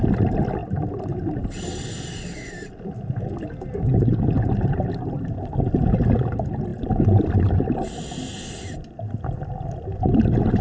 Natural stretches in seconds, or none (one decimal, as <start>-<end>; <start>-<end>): 0.0-10.6